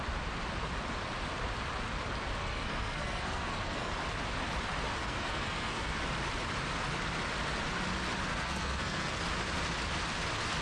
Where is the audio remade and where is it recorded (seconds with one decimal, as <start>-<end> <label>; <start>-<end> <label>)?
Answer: 0.0-2.4 recorded; 2.4-3.9 remade; 3.9-5.0 recorded; 5.0-6.0 remade; 6.0-8.3 recorded; 8.3-9.2 remade; 9.2-10.6 recorded